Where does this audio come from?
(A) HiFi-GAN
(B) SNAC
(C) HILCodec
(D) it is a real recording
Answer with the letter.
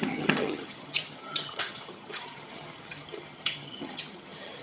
A